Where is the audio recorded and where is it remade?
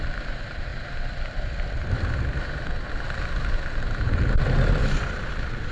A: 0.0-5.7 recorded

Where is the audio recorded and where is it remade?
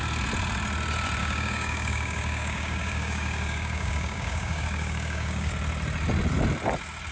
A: 0.0-1.2 recorded; 1.2-5.5 remade; 5.5-7.1 recorded